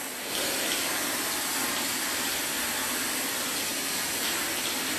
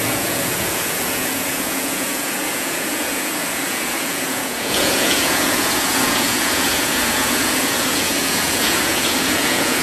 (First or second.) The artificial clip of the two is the second